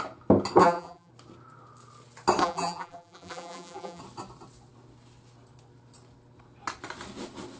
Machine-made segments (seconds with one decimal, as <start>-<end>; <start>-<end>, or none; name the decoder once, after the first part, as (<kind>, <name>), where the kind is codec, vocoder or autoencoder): 0.6-1.1 (vocoder, BigVGAN v2); 2.4-4.0